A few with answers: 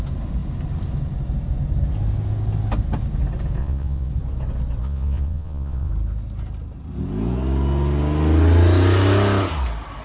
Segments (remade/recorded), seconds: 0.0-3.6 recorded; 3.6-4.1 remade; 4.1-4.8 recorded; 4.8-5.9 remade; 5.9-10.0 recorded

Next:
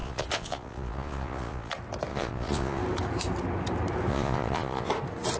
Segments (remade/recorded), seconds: 0.0-1.7 remade; 1.7-2.1 recorded; 2.1-2.8 remade; 2.8-4.1 recorded; 4.1-4.9 remade; 4.9-5.4 recorded

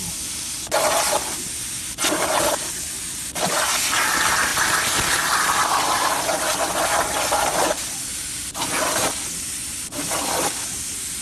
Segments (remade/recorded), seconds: 0.0-11.2 recorded

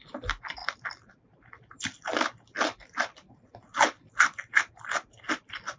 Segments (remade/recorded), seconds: 0.0-5.8 recorded

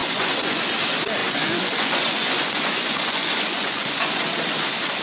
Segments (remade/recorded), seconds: 0.0-0.6 remade; 0.6-1.2 recorded; 1.2-4.2 remade; 4.2-5.0 recorded